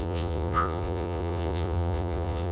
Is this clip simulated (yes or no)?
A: yes